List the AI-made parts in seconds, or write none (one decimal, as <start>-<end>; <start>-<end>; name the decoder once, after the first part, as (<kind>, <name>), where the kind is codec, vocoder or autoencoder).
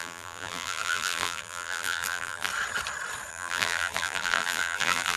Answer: 0.0-2.5 (vocoder, BigVGAN v2); 3.3-5.2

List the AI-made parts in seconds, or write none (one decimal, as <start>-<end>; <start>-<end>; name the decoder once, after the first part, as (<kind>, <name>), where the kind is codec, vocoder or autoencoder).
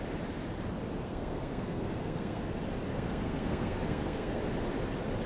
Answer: 1.0-2.4 (codec, SNAC); 2.9-4.4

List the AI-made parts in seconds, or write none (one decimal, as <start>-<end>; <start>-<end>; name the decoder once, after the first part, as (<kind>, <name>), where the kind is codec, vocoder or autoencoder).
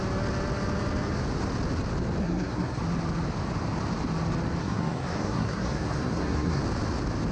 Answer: 2.2-2.8 (codec, SNAC); 4.6-6.6